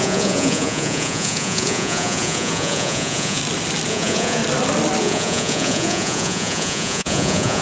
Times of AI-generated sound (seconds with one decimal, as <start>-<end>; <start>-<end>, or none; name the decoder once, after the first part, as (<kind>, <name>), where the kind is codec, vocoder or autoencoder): 0.0-3.4 (vocoder, Vocos); 3.9-4.4; 5.0-7.6